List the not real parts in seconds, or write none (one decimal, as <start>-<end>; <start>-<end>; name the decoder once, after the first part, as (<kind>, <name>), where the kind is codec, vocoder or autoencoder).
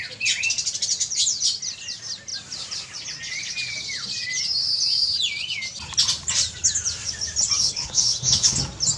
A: 7.6-8.6 (codec, HILCodec)